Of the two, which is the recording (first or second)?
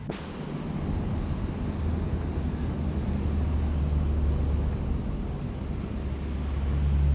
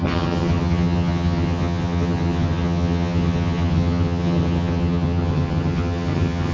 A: first